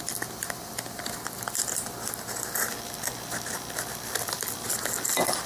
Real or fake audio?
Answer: real